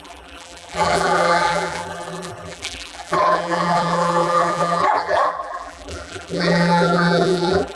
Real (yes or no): no